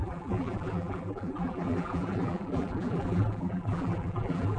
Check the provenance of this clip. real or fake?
fake